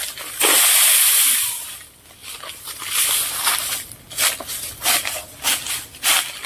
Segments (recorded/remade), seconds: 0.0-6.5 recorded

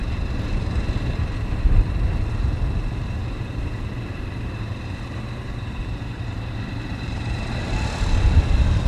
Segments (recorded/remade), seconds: 0.0-8.9 remade

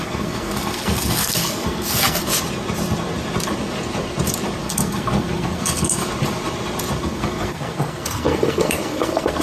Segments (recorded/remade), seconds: 0.0-2.3 remade; 2.3-4.6 recorded; 4.6-6.0 remade; 6.0-7.0 recorded; 7.0-9.4 remade